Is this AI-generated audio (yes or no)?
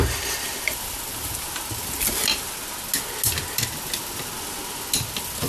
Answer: no